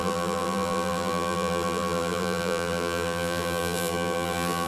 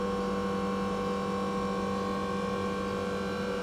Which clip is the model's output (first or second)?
first